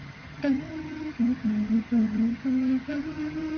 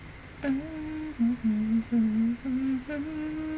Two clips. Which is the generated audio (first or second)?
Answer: first